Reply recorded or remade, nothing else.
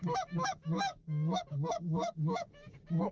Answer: remade